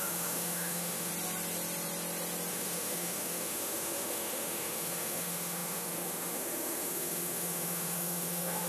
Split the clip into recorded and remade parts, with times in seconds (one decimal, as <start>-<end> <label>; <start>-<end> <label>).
0.0-1.1 remade; 1.1-2.5 recorded; 2.5-8.7 remade